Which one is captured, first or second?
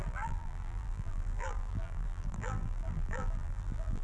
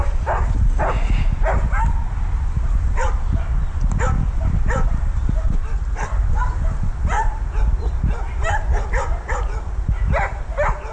second